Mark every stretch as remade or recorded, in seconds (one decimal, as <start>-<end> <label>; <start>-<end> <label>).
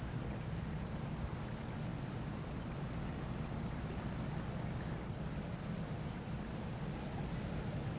0.0-8.0 recorded